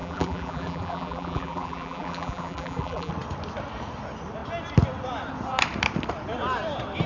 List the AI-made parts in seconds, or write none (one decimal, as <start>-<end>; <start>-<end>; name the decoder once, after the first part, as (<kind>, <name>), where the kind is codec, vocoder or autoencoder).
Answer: 0.0-3.1 (vocoder, BigVGAN v2)